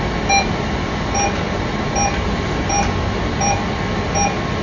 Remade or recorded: recorded